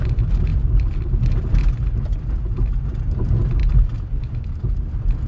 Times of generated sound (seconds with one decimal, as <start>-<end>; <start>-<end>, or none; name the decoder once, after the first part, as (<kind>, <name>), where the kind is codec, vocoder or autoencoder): 3.6-4.3 (vocoder, BigVGAN v2)